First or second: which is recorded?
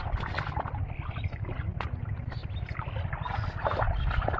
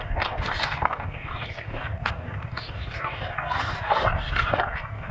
first